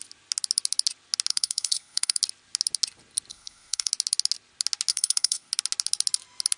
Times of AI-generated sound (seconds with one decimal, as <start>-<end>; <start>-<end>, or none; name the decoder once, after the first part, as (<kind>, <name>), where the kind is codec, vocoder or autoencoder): 1.3-2.2 (codec, SNAC); 3.3-3.9; 4.9-5.5